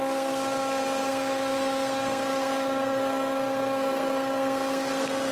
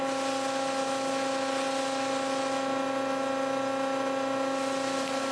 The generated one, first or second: first